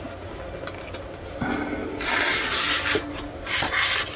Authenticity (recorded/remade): recorded